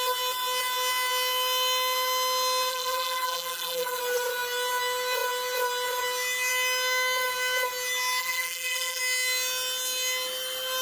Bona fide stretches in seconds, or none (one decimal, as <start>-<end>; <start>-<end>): 0.0-2.7; 4.0-8.2; 9.0-10.8